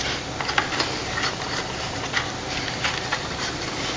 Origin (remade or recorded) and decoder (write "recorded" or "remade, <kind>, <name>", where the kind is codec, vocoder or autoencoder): recorded